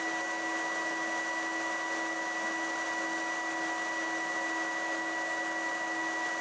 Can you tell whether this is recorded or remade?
recorded